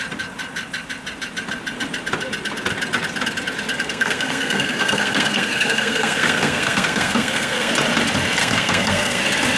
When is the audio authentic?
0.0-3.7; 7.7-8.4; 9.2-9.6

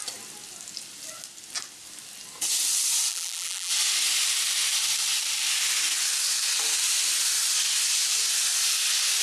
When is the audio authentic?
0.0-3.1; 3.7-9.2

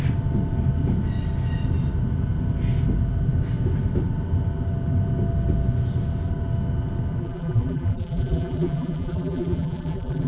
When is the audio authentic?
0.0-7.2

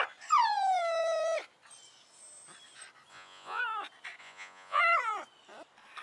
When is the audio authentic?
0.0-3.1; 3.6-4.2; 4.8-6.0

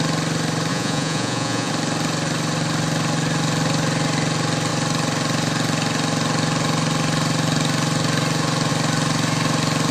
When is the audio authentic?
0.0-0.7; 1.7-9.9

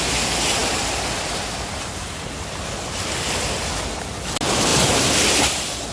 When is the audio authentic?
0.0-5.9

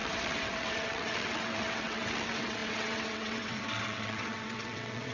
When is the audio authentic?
none